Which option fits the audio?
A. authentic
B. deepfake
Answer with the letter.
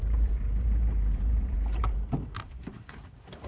B